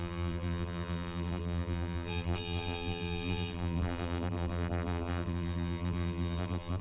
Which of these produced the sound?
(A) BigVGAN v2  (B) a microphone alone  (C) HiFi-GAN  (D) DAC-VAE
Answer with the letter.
A